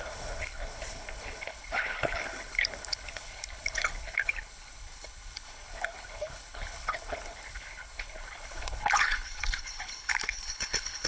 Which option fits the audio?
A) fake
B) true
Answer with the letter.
A